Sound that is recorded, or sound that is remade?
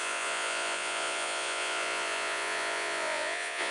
remade